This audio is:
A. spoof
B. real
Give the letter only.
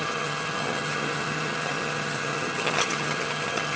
A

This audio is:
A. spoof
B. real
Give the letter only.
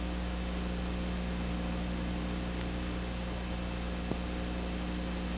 B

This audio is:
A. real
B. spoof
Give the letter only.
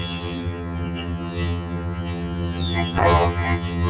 B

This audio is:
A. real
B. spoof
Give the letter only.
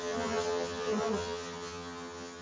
B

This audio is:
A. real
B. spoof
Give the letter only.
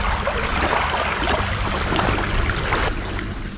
A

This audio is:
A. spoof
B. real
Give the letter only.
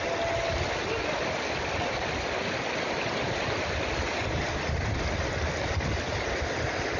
B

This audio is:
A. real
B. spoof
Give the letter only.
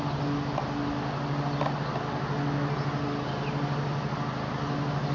A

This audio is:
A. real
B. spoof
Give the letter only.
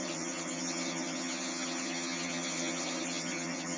B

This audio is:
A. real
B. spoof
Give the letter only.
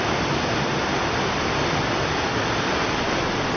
A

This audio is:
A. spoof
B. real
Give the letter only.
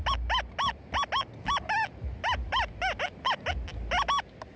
B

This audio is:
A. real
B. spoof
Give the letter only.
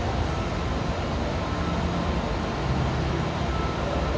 A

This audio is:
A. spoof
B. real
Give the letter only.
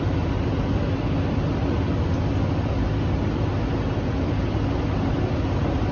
B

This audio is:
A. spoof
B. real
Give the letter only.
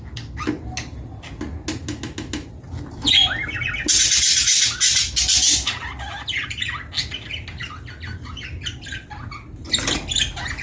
B